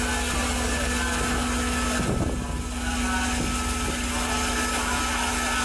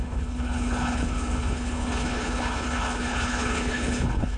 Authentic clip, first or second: first